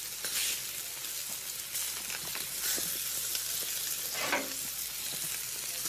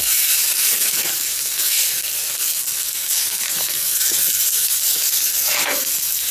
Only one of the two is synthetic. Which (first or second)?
second